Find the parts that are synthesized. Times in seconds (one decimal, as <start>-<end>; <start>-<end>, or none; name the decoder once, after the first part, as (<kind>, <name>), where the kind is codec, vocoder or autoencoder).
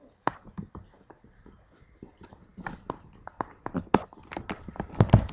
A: none